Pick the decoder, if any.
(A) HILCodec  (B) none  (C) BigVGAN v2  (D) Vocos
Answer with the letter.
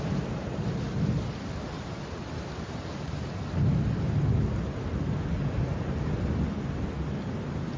B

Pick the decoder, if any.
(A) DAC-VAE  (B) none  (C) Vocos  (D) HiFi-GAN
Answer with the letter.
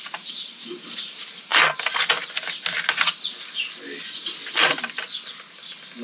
B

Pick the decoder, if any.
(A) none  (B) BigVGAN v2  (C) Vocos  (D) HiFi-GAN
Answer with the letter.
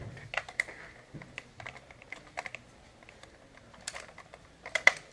A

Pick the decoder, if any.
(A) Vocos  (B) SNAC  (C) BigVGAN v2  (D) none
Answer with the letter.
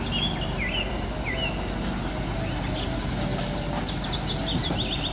D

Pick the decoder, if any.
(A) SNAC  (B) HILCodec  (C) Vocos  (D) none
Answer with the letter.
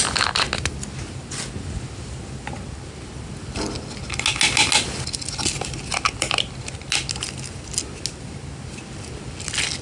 D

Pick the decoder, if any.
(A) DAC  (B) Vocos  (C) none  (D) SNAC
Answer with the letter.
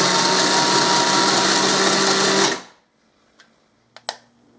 C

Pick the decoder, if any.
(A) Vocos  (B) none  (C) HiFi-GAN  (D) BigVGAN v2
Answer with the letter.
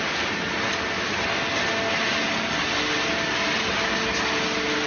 B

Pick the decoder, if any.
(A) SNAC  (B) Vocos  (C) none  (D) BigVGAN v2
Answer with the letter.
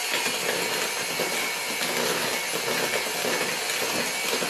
C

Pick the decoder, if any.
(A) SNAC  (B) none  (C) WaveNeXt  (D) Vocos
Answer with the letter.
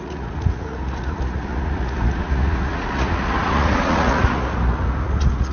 D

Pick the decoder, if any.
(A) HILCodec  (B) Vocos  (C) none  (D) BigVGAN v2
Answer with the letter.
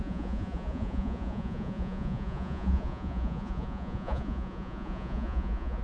B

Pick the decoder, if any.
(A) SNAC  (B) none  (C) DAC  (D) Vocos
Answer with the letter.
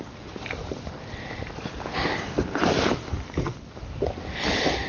B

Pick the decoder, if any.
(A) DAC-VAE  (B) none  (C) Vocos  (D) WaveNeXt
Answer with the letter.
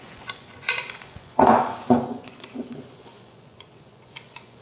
C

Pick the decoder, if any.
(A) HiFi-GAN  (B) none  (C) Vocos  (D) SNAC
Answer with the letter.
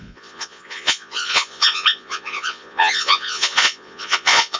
C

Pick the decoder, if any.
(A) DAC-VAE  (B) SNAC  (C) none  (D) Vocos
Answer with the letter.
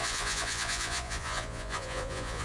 D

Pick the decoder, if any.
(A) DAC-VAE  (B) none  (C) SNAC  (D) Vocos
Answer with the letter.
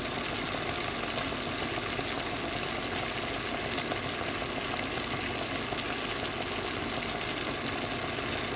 B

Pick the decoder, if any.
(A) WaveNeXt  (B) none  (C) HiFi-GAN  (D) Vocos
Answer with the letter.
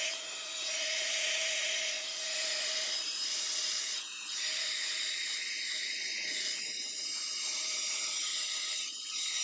D